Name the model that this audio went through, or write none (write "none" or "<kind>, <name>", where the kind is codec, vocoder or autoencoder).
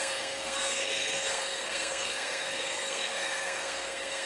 codec, SNAC